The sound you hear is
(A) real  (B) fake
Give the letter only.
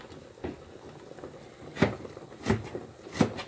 A